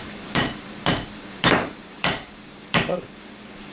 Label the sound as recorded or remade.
remade